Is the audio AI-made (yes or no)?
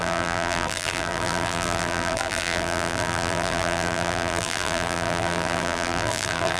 yes